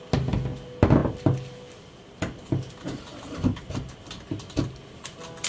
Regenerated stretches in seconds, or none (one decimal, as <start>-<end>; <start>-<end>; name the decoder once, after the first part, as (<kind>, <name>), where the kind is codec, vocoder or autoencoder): none